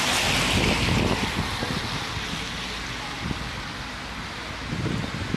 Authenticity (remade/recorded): recorded